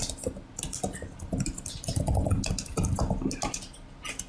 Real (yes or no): yes